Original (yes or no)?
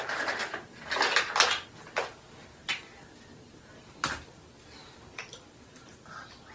yes